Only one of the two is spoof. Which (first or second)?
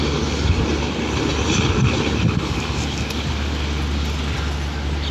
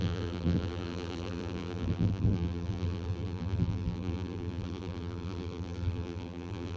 second